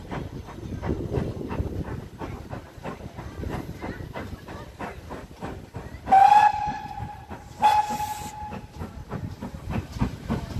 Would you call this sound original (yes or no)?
yes